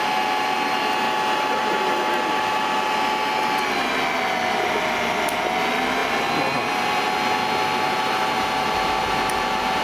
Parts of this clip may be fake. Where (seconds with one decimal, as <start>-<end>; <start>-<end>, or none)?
none